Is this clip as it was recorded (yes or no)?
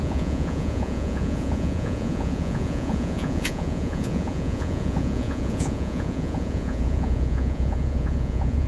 no